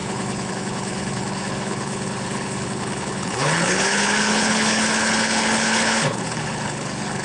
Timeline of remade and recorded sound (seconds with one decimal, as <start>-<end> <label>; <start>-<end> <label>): 0.0-7.2 remade

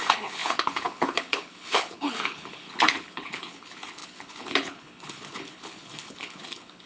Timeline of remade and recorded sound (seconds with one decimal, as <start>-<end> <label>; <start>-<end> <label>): 0.0-6.9 remade

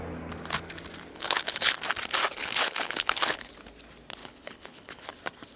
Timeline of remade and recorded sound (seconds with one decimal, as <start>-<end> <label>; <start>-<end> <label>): 0.0-1.1 recorded; 1.1-1.8 remade; 1.8-2.4 recorded; 2.4-3.5 remade; 3.5-4.2 recorded; 4.2-5.1 remade; 5.1-5.6 recorded

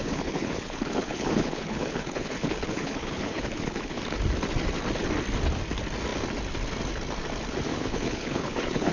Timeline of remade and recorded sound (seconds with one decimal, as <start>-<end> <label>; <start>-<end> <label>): 0.0-4.0 remade; 4.0-7.7 recorded; 7.7-8.9 remade